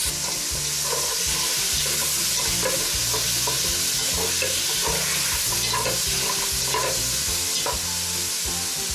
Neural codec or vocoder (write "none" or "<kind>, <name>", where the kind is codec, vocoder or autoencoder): none